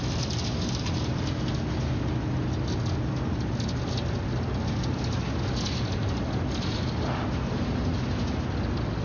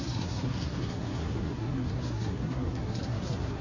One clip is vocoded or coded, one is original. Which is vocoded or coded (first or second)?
second